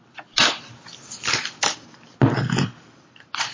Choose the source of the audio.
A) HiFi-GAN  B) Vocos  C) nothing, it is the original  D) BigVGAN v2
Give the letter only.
C